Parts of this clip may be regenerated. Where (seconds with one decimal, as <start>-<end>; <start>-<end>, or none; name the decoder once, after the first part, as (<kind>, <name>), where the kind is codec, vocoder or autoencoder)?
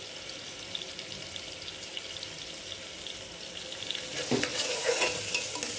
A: 4.5-5.1 (vocoder, Vocos)